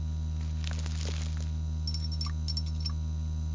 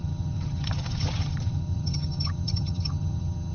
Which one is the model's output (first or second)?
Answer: second